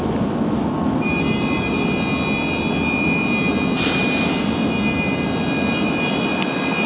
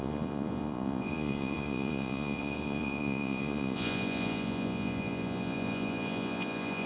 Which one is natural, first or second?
first